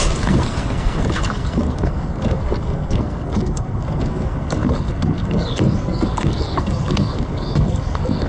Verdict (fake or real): fake